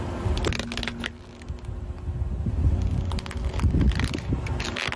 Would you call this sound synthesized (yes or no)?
no